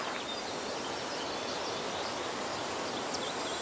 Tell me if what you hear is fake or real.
real